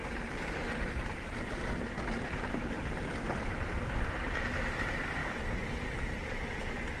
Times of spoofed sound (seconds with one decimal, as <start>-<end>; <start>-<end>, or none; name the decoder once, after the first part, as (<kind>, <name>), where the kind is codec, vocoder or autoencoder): none